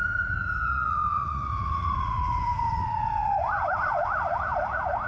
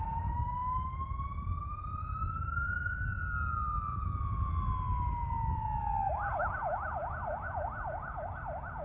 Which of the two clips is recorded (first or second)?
second